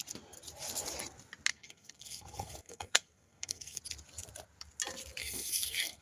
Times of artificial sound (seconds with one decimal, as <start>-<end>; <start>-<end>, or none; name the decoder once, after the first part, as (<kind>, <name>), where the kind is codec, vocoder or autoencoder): 1.5-3.8 (codec, SNAC); 5.2-6.0